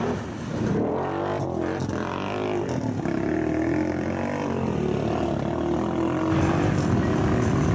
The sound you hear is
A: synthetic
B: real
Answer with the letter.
B